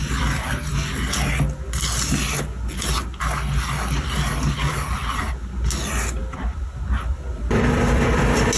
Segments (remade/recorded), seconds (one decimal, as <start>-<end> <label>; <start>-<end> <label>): 0.0-0.7 remade; 0.7-7.3 recorded; 7.3-8.2 remade; 8.2-8.6 recorded